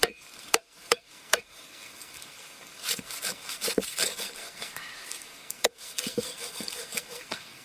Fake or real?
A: fake